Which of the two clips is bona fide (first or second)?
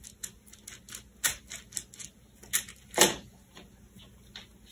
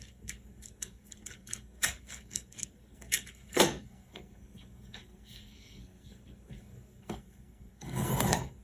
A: first